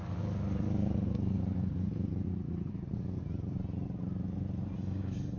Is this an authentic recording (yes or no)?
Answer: yes